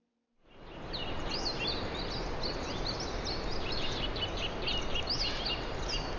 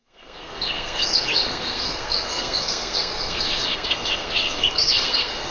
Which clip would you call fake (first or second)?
second